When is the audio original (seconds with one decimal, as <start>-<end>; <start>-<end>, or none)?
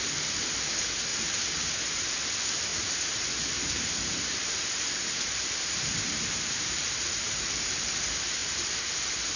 0.0-1.1; 1.6-2.7; 7.9-8.4; 8.9-9.4